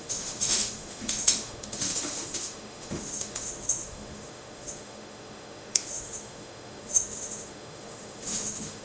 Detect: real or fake fake